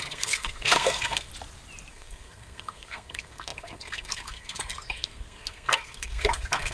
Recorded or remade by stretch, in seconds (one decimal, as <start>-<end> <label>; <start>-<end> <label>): 0.0-1.3 remade; 1.3-1.9 recorded; 1.9-6.7 remade